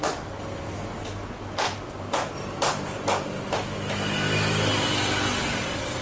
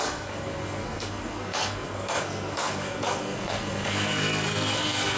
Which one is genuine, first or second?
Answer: first